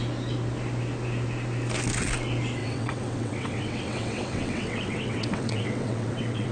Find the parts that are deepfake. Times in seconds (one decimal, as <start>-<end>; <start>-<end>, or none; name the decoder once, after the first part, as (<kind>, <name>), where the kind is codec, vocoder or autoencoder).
2.6-6.5 (vocoder, WaveNeXt)